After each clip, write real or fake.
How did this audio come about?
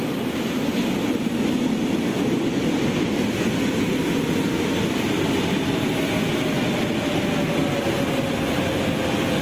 real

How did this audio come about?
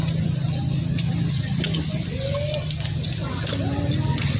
real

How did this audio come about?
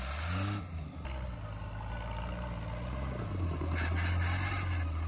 real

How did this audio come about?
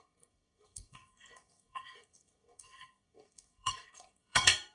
fake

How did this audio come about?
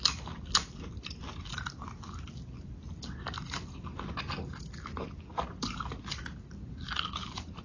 real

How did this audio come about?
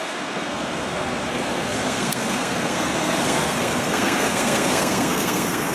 fake